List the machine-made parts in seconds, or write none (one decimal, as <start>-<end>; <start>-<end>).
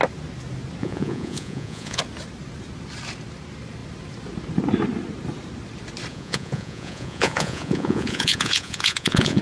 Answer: 0.8-2.0; 6.1-9.4